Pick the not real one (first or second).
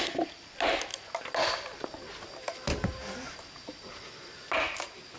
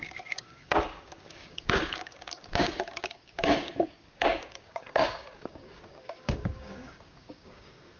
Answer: second